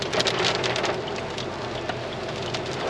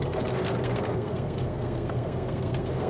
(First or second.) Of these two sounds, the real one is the first